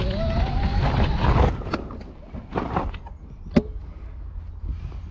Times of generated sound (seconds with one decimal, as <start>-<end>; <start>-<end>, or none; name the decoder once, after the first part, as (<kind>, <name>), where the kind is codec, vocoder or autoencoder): 3.8-4.4 (codec, DAC)